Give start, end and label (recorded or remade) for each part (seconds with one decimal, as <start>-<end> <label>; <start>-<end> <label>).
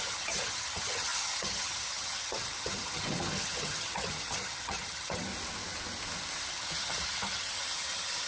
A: 0.0-5.3 remade; 5.3-6.5 recorded; 6.5-8.3 remade